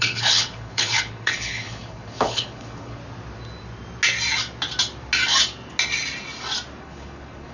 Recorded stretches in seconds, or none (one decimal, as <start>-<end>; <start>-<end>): 3.0-6.8